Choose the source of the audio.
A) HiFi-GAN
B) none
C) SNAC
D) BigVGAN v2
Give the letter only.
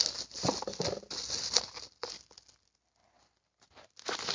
B